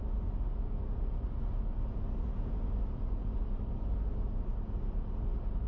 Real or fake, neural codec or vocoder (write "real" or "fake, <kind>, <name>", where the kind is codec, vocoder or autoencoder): real